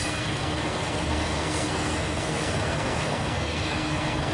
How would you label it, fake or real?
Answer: fake